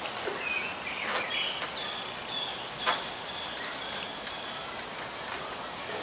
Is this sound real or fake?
real